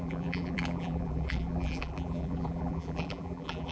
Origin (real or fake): fake